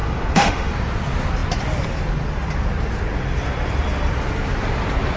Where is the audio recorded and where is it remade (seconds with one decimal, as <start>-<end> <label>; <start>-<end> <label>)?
0.0-0.7 remade; 0.7-5.2 recorded

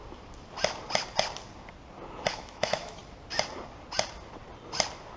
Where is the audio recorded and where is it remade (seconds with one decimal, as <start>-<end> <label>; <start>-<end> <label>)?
0.0-2.3 recorded; 2.3-3.0 remade; 3.0-5.2 recorded

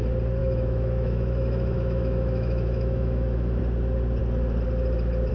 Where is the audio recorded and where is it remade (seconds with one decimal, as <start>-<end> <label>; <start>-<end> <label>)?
0.0-0.4 recorded; 0.4-3.6 remade; 3.6-5.3 recorded

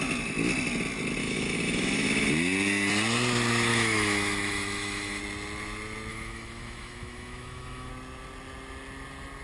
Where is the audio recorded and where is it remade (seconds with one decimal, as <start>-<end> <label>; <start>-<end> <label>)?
0.0-1.2 recorded; 1.2-2.3 remade; 2.3-3.7 recorded; 3.7-5.2 remade; 5.2-6.1 recorded; 6.1-7.9 remade; 7.9-9.4 recorded